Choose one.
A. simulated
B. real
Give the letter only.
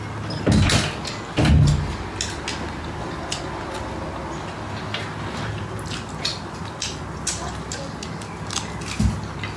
B